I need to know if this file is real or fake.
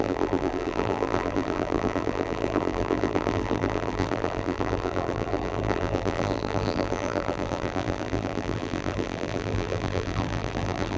fake